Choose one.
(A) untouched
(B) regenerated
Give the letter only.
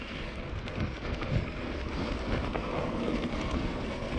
B